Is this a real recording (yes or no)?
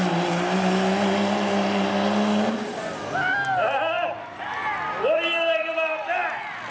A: yes